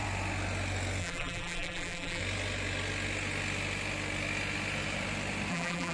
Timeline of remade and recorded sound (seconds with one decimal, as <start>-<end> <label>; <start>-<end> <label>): 0.0-1.0 recorded; 1.0-2.2 remade; 2.2-5.5 recorded; 5.5-5.9 remade